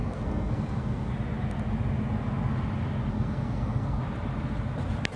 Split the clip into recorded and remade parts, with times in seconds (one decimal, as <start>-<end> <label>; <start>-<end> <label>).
0.0-1.1 remade; 1.1-3.1 recorded; 3.1-4.0 remade; 4.0-5.2 recorded